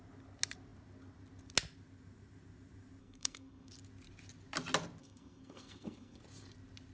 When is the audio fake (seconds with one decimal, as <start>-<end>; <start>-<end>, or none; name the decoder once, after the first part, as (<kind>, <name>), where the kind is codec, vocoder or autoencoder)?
3.0-3.7 (codec, SNAC); 5.0-6.2